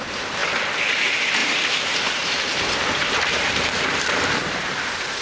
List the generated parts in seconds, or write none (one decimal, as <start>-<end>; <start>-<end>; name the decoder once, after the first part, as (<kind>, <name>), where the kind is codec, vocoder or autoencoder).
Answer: 0.0-0.4 (vocoder, BigVGAN v2); 0.9-5.2